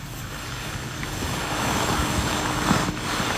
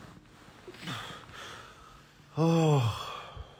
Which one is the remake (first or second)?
first